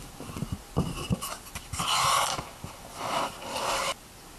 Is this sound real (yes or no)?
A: yes